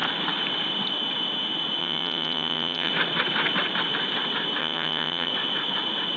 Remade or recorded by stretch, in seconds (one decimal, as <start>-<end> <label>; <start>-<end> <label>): 0.0-1.8 recorded; 1.8-2.9 remade; 2.9-4.6 recorded; 4.6-5.3 remade; 5.3-6.2 recorded